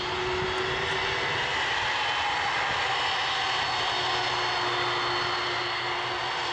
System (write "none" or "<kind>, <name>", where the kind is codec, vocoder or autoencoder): none